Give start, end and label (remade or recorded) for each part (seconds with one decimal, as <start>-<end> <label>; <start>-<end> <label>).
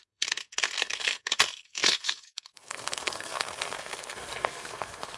0.0-5.2 remade